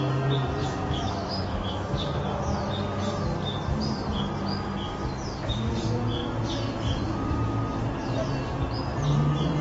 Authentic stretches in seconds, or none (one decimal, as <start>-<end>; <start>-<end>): 0.0-0.6; 2.2-9.6

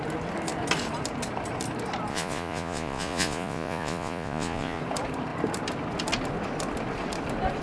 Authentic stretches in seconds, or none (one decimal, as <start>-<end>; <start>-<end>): 0.0-2.1; 4.8-7.6

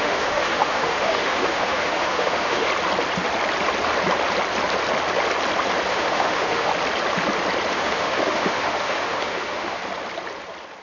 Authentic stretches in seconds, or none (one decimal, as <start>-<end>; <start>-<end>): 2.7-5.9; 6.7-7.7; 9.8-10.8

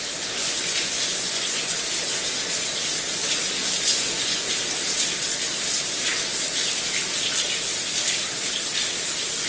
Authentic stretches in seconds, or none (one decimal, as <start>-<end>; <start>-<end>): 0.0-0.4; 1.8-3.6; 4.5-9.5